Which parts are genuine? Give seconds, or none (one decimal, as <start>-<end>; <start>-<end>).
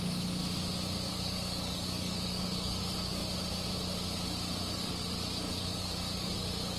0.4-1.1; 3.2-4.7